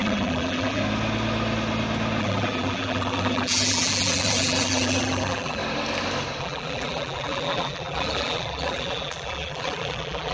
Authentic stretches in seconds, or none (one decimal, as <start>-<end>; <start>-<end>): 0.8-2.2; 5.6-6.4

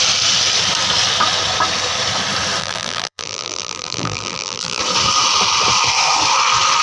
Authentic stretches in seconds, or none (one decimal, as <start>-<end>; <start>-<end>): 0.0-2.6; 4.8-6.8

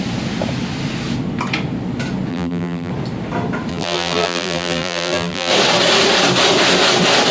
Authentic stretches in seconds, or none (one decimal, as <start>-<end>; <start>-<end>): 0.0-2.3; 2.9-3.7; 5.5-7.3

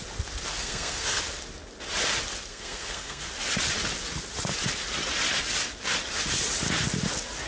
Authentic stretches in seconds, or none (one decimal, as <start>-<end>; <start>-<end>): 0.0-0.5; 1.2-2.5; 3.3-7.5

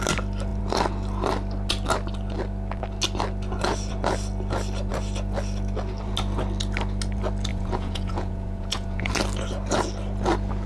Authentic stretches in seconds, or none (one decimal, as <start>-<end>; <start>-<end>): 0.0-7.5; 9.1-10.7